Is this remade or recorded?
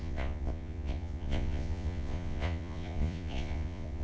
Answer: remade